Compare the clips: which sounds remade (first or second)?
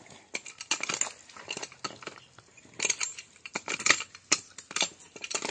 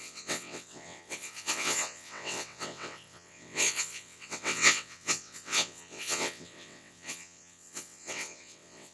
second